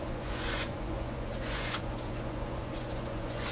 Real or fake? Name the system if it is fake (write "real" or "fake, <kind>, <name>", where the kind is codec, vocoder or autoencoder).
fake, vocoder, Vocos